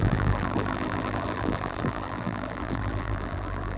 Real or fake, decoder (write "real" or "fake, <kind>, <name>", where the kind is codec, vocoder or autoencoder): fake, vocoder, BigVGAN v2